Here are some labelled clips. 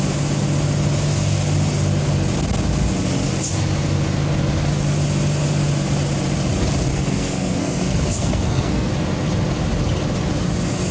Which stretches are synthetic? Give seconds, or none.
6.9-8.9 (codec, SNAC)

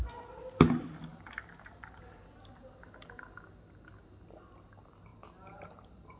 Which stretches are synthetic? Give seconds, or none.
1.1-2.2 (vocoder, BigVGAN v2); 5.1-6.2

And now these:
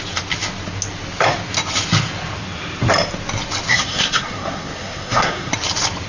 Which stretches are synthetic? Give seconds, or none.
3.7-5.5 (codec, SNAC)